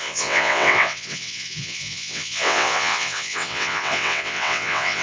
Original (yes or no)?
no